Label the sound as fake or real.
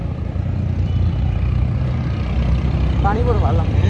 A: fake